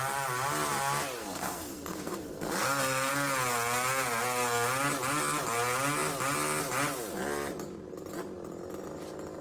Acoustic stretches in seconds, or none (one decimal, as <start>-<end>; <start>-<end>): 0.0-1.2; 3.1-9.4